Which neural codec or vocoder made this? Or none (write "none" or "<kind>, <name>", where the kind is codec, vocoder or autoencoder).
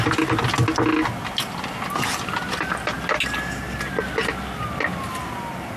none